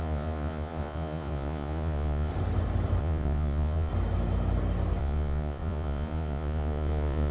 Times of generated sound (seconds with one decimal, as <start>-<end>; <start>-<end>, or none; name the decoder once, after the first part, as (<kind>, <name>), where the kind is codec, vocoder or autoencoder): 0.0-2.3 (vocoder, Vocos); 3.0-3.9; 5.0-7.3